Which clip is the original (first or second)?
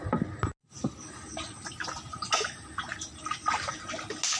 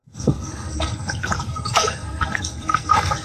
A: first